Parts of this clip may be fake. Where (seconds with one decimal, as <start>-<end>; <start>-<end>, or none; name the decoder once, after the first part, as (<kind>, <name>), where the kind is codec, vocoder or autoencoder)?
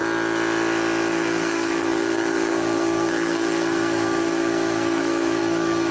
1.1-5.9 (codec, SNAC)